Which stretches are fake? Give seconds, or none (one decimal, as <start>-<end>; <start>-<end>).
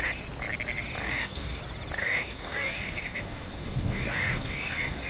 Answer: 1.0-1.6; 2.0-5.1